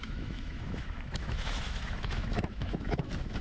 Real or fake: fake